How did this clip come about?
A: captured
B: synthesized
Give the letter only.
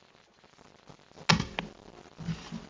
A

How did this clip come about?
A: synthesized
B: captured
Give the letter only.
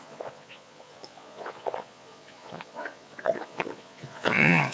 A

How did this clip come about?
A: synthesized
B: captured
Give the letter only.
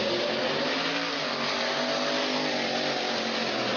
B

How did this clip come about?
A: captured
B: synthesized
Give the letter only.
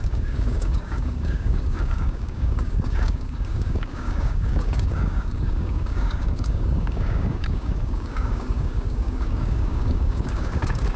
B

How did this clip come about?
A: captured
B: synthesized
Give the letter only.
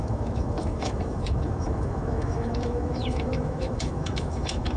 B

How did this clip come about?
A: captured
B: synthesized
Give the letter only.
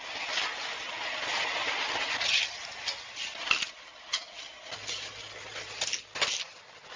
A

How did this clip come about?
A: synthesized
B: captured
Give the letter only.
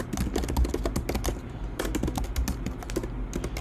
B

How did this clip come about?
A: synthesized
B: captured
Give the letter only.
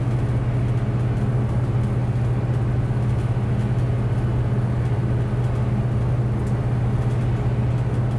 B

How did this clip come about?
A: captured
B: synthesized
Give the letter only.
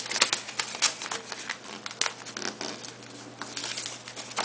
A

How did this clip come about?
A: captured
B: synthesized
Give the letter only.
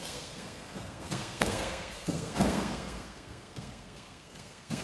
B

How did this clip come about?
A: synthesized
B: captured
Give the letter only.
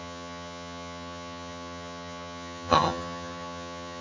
A